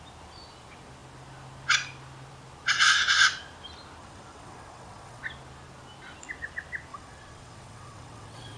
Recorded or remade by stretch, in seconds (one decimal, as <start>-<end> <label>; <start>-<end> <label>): 0.0-4.0 recorded; 4.0-5.2 remade; 5.2-6.9 recorded; 6.9-8.6 remade